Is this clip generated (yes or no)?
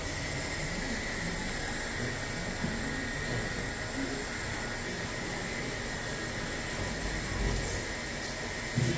no